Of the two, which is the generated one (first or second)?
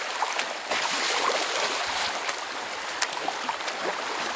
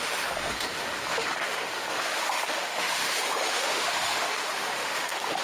second